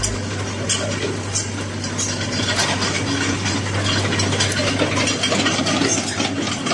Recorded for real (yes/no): yes